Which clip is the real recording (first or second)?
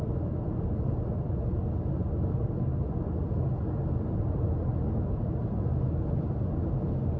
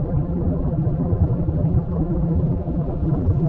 first